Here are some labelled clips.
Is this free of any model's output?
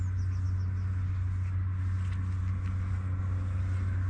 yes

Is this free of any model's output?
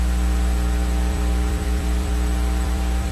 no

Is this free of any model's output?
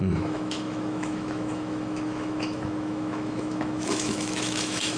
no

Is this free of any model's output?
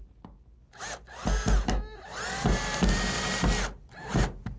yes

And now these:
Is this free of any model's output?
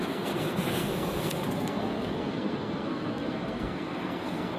no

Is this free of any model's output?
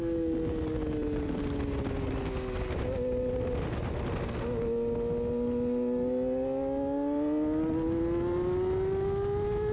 yes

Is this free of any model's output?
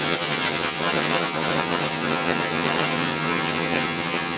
no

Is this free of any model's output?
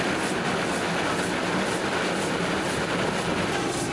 yes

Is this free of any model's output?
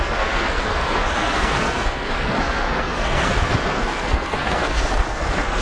no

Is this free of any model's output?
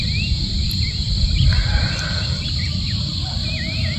yes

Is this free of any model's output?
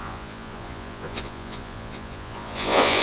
no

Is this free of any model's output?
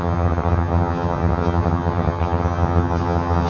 no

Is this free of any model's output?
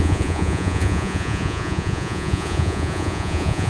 no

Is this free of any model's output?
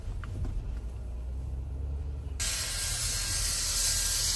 yes